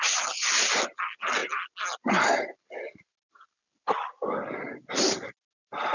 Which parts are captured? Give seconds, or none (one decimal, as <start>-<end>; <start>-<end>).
0.0-5.9